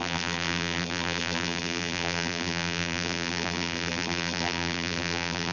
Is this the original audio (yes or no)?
no